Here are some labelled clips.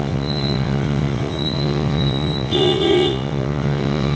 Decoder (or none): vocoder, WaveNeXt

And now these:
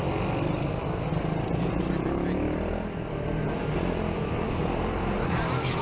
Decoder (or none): none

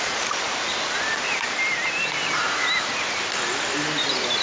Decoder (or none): none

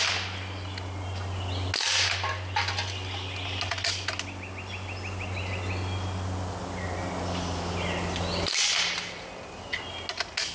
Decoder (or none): none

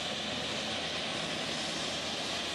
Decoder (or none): none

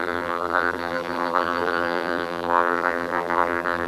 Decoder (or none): vocoder, BigVGAN v2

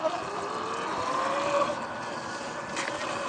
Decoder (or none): none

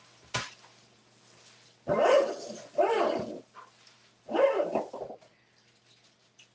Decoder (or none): none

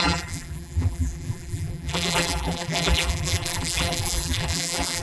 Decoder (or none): vocoder, BigVGAN v2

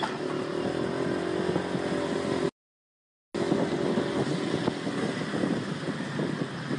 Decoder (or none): none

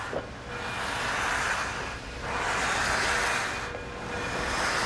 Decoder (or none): none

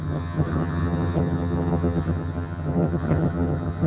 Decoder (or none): vocoder, HiFi-GAN